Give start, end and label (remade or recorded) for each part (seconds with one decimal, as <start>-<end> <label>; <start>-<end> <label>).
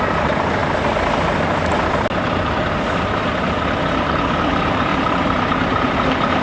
0.0-0.6 remade; 0.6-4.4 recorded; 4.4-4.9 remade; 4.9-5.5 recorded; 5.5-6.4 remade